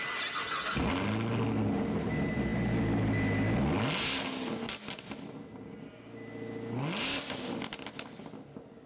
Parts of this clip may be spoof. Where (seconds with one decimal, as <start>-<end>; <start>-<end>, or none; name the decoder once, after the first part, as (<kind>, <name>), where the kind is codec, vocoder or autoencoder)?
none